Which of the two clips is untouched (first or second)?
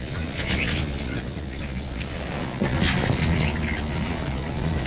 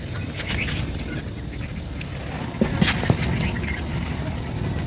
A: second